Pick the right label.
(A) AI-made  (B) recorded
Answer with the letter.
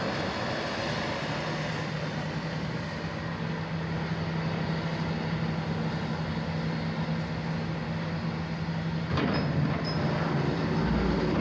B